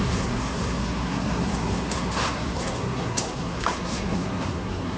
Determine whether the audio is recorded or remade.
remade